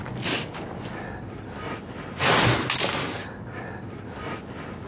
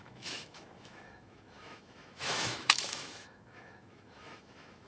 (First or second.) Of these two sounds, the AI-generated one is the second